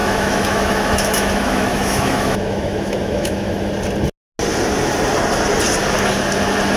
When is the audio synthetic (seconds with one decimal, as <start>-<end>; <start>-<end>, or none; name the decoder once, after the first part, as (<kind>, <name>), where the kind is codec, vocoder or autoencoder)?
0.0-3.7 (autoencoder, DAC-VAE)